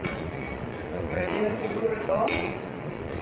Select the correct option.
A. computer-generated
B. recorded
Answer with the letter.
A